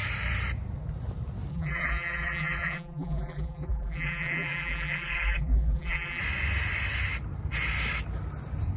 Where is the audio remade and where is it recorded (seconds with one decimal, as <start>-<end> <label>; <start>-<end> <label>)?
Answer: 0.0-1.5 recorded; 1.5-6.2 remade; 6.2-8.8 recorded